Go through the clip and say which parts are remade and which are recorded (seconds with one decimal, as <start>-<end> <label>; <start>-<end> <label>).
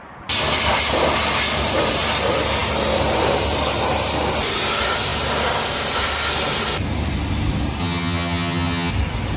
0.0-7.8 recorded; 7.8-8.9 remade; 8.9-9.4 recorded